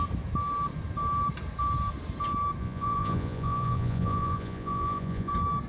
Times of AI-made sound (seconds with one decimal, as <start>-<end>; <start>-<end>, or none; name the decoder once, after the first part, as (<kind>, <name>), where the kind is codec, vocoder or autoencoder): 2.6-5.3 (vocoder, Vocos)